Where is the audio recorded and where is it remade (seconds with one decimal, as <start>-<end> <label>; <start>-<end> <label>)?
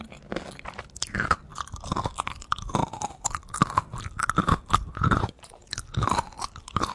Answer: 0.0-4.8 recorded; 4.8-5.7 remade; 5.7-6.9 recorded